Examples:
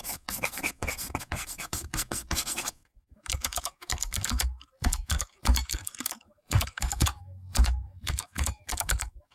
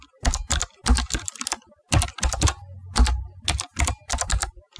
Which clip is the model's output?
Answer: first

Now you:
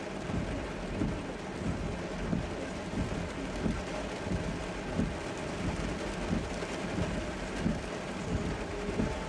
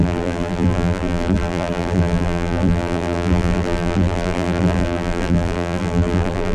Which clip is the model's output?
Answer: second